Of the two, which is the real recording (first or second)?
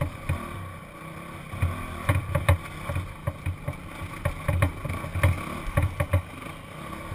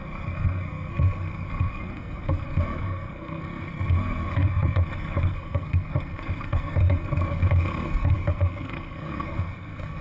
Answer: first